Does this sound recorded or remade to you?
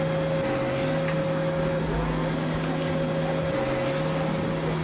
recorded